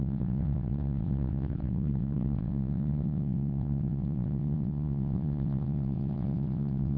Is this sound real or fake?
fake